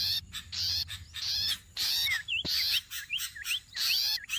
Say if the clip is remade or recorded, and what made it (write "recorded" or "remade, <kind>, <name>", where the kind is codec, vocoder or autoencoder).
remade, vocoder, BigVGAN v2